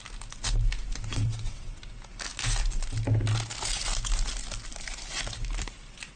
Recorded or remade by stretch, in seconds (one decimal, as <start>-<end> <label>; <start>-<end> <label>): 0.0-1.1 recorded; 1.1-1.8 remade; 1.8-6.2 recorded